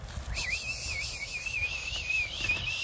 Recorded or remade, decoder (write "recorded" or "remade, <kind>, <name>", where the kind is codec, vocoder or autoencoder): recorded